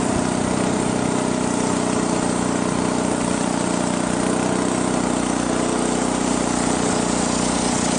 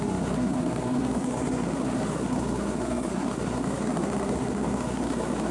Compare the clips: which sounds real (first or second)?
first